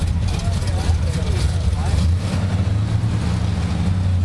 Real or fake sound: real